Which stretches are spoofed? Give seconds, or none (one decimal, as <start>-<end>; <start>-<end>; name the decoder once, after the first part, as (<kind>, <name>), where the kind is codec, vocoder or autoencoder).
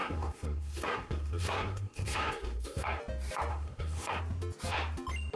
0.0-3.0 (codec, SNAC); 3.5-4.2